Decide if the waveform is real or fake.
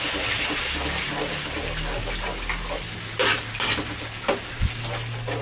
real